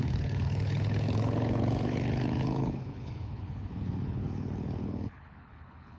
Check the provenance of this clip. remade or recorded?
remade